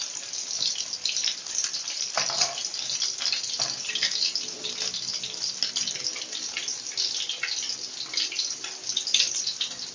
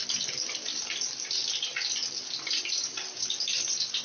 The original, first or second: first